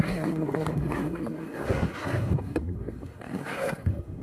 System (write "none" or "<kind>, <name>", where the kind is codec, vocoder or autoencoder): codec, SNAC